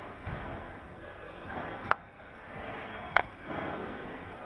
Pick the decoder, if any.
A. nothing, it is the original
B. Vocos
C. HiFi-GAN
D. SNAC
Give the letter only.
D